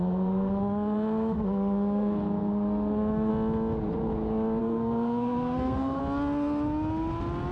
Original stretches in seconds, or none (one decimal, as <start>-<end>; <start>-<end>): 3.3-4.6; 6.0-7.5